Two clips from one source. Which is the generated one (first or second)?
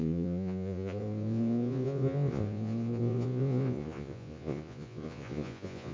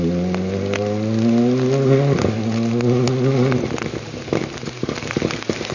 first